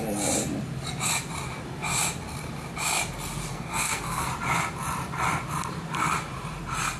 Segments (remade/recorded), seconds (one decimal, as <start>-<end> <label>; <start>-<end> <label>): 0.0-3.5 recorded; 3.5-4.3 remade; 4.3-7.0 recorded